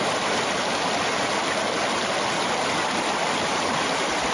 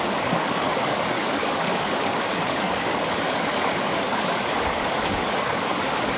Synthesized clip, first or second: second